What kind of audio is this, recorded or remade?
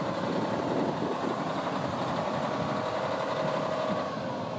recorded